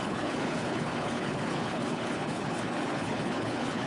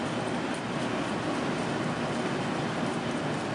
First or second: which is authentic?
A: second